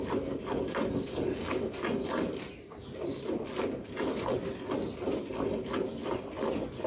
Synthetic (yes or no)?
no